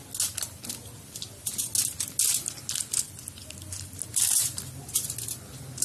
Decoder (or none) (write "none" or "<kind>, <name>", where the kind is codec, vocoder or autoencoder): none